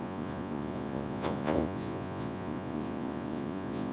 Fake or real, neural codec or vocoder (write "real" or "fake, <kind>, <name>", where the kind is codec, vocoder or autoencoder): fake, vocoder, Vocos